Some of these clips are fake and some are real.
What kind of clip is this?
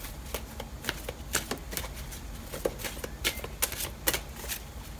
real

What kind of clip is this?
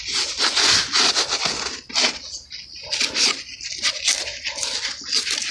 real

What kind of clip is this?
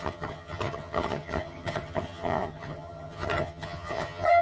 fake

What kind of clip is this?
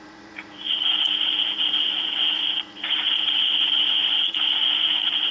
fake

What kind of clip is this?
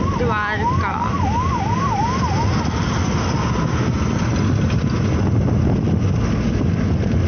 real